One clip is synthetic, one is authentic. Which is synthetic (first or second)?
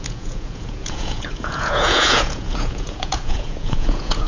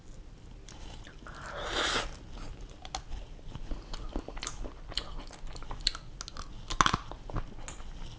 first